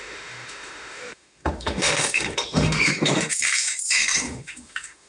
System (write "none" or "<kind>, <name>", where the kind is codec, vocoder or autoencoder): autoencoder, DAC-VAE